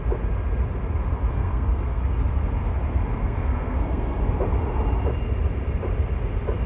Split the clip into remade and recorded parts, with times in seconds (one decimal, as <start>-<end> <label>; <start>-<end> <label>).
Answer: 0.0-1.3 recorded; 1.3-2.0 remade; 2.0-3.2 recorded; 3.2-4.3 remade; 4.3-6.7 recorded